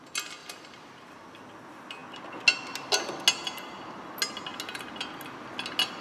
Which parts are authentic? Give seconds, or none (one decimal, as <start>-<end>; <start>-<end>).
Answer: 0.0-0.4; 1.5-6.0